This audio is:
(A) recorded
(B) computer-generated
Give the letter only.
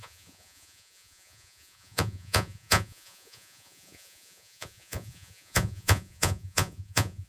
B